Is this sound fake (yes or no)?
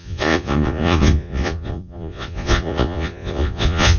yes